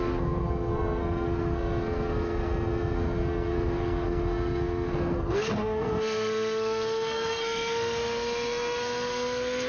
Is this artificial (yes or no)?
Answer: yes